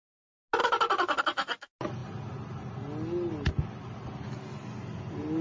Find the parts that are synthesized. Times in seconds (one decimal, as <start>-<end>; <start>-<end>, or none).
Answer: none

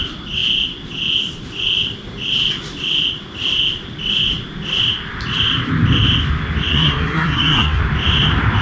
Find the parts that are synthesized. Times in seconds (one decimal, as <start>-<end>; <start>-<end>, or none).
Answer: 6.7-7.8

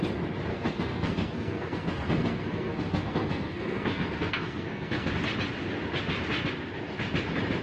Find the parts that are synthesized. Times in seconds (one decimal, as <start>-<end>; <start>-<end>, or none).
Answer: 0.5-5.1

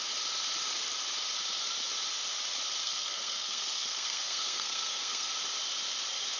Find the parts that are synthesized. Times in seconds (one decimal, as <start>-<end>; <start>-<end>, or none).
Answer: 2.8-5.3

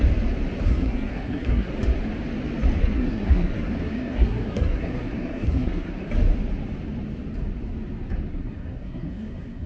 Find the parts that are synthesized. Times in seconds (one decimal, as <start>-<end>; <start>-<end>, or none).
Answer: 0.7-1.7; 2.8-6.1; 8.3-9.7

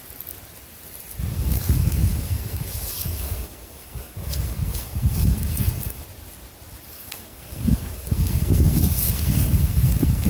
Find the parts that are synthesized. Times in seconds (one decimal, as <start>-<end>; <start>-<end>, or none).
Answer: 1.3-6.0; 6.9-10.3